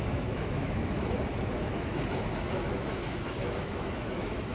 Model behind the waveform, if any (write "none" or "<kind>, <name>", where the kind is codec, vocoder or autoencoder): autoencoder, DAC-VAE